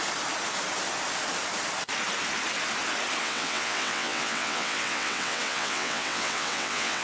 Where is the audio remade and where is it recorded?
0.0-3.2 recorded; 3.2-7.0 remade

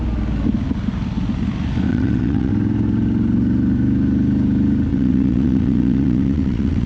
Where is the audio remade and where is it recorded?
0.0-1.9 recorded; 1.9-2.5 remade; 2.5-4.9 recorded; 4.9-6.9 remade

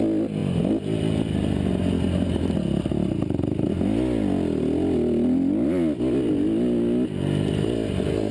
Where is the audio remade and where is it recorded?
0.0-8.3 recorded

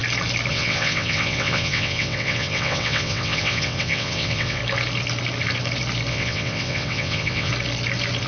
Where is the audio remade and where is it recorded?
0.0-0.5 recorded; 0.5-4.6 remade; 4.6-6.1 recorded; 6.1-7.5 remade; 7.5-8.3 recorded

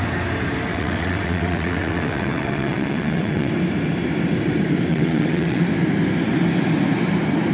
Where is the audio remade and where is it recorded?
0.0-0.7 recorded; 0.7-3.5 remade; 3.5-4.9 recorded; 4.9-5.6 remade; 5.6-7.5 recorded

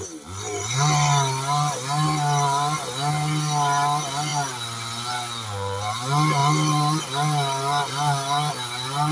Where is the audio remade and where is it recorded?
0.0-9.1 recorded

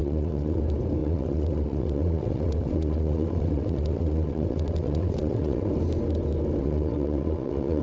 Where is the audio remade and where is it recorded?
0.0-0.6 remade; 0.6-1.0 recorded; 1.0-5.7 remade; 5.7-6.6 recorded; 6.6-7.8 remade